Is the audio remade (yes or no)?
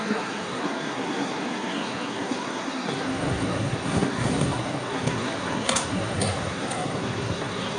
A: yes